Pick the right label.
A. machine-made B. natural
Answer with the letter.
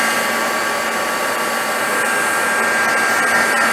B